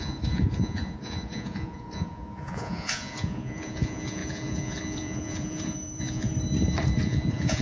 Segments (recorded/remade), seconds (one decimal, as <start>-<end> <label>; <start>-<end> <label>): 0.0-6.3 remade; 6.3-7.0 recorded; 7.0-7.6 remade